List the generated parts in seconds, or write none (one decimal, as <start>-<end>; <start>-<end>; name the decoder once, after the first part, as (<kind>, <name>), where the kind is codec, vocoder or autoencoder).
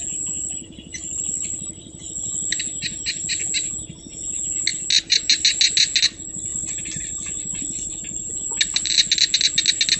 0.9-2.0 (vocoder, BigVGAN v2); 6.5-8.3